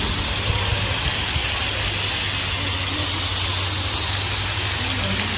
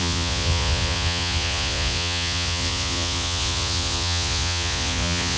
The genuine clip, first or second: first